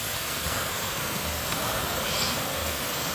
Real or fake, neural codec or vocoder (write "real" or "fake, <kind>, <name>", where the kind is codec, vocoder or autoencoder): fake, codec, SNAC